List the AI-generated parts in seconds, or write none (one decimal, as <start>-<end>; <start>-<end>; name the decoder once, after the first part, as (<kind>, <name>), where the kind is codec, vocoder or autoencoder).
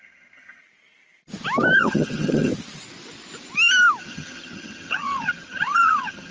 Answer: 0.0-0.6 (vocoder, HiFi-GAN); 1.8-2.5; 4.0-6.3